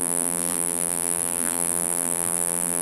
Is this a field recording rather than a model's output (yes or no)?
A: no